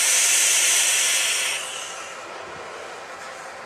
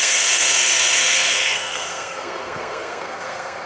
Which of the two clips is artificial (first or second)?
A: second